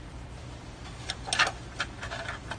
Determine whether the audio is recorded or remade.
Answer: recorded